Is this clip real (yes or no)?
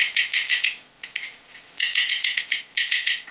no